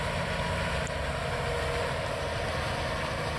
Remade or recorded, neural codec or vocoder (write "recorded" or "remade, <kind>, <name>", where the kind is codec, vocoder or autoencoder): recorded